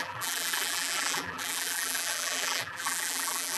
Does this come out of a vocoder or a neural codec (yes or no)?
yes